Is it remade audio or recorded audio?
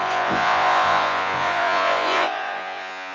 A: remade